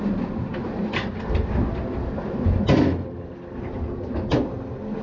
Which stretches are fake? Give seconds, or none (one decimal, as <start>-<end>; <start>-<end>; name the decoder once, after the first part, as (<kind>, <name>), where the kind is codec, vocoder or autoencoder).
none